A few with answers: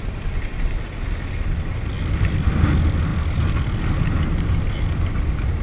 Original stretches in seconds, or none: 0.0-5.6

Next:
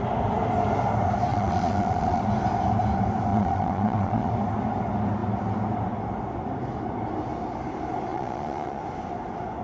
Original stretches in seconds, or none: 0.0-1.3; 2.2-3.3; 4.3-8.1; 8.8-9.6